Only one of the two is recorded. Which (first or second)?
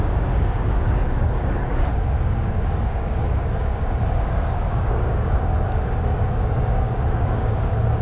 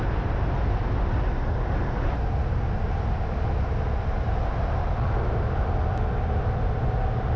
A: second